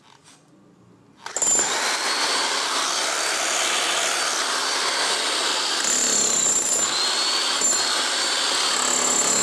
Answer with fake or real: real